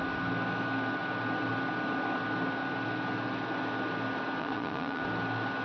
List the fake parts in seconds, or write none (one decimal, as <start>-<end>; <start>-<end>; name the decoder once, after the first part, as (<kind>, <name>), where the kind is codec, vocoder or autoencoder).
4.4-5.0 (vocoder, Vocos)